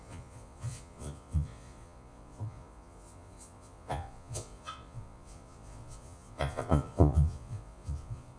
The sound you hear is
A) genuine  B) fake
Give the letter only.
B